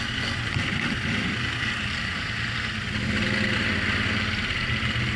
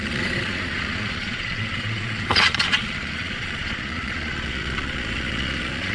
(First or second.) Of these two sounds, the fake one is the second